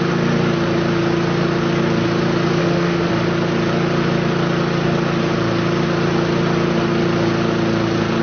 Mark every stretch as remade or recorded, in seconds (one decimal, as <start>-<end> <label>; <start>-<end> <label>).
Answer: 0.0-2.6 recorded; 2.6-3.1 remade; 3.1-8.2 recorded